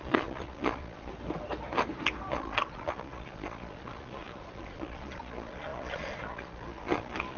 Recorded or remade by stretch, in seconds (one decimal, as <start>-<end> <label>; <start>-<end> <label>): 0.0-1.1 remade; 1.1-2.3 recorded; 2.3-7.4 remade